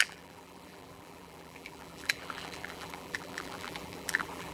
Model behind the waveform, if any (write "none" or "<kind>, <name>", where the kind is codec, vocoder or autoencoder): vocoder, BigVGAN v2